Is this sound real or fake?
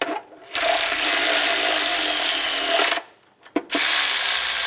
real